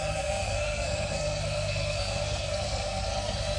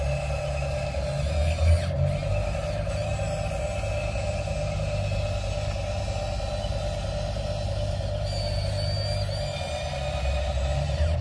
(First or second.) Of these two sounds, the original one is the second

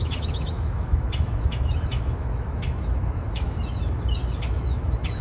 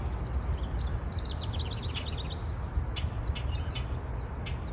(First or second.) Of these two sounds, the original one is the second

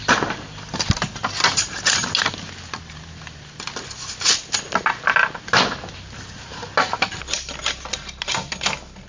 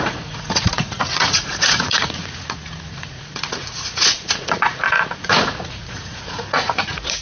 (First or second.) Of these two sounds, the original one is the first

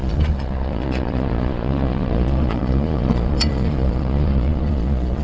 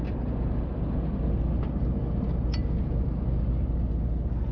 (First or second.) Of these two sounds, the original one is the second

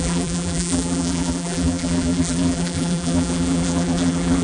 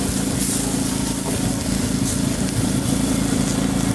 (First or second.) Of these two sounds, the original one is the second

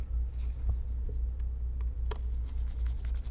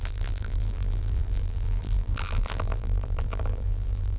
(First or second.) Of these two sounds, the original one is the first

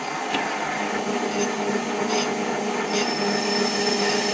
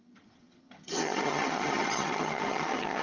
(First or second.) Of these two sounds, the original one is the first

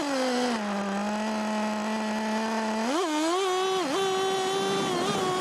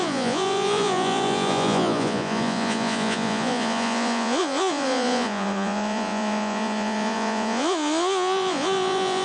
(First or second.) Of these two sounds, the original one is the first